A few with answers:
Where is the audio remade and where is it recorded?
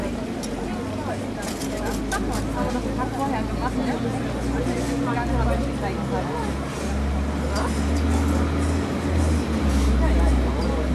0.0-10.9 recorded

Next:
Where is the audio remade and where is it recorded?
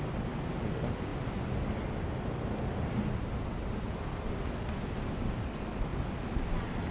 0.0-6.9 recorded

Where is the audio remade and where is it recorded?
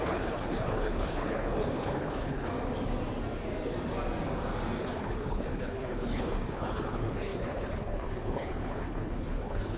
0.0-2.5 remade; 2.5-4.8 recorded; 4.8-9.8 remade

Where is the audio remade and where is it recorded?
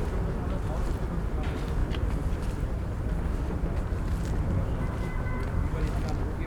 0.0-1.8 recorded; 1.8-3.2 remade; 3.2-4.6 recorded; 4.6-5.8 remade; 5.8-6.5 recorded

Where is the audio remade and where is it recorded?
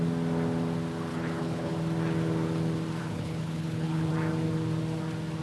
0.0-1.1 recorded; 1.1-1.7 remade; 1.7-3.0 recorded; 3.0-4.1 remade; 4.1-5.4 recorded